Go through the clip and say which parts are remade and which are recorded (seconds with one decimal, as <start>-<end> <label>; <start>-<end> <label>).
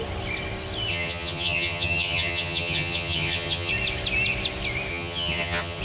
0.0-0.9 recorded; 0.9-3.7 remade; 3.7-4.9 recorded; 4.9-5.8 remade